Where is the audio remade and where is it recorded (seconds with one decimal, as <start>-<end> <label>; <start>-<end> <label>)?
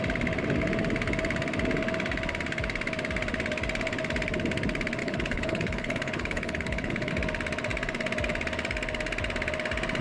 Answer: 0.0-5.0 recorded; 5.0-7.1 remade; 7.1-10.0 recorded